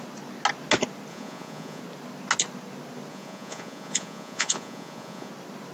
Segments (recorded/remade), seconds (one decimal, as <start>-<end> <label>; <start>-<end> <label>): 0.0-1.1 recorded; 1.1-1.8 remade; 1.8-3.1 recorded; 3.1-5.3 remade; 5.3-5.7 recorded